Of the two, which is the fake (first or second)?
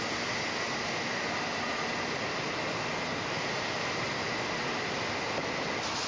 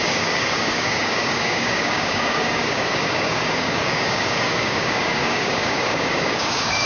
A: second